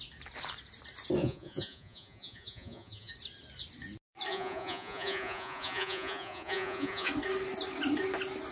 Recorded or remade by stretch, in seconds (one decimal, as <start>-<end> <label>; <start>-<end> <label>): 0.0-1.2 recorded; 1.2-3.1 remade; 3.1-4.3 recorded; 4.3-7.1 remade; 7.1-8.5 recorded